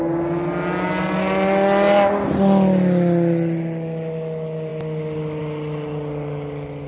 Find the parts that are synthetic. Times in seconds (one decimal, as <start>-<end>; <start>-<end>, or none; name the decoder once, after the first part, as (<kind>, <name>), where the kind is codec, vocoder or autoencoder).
none